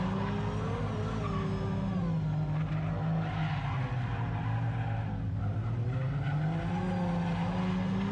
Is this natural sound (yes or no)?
yes